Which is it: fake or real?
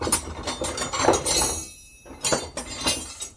real